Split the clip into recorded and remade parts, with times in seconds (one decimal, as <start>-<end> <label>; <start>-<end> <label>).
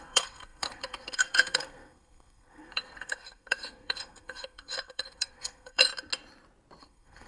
0.0-5.9 remade; 5.9-6.8 recorded; 6.8-7.3 remade